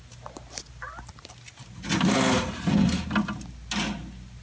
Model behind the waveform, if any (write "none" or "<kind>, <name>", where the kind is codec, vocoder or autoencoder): none